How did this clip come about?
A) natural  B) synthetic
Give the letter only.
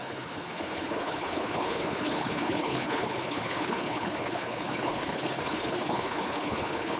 B